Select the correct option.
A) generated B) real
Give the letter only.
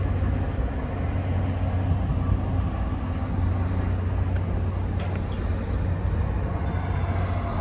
B